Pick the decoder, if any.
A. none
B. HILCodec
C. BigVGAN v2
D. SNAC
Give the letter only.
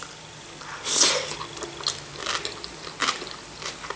A